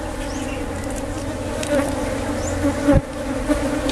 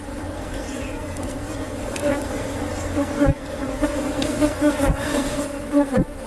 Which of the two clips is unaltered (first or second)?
first